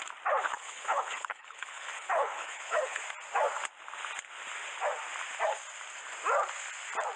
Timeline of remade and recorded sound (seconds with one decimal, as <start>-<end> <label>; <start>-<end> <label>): 0.0-0.5 recorded; 0.5-3.0 remade; 3.0-7.2 recorded